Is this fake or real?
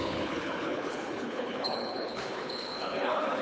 fake